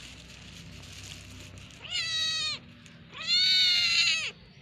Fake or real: real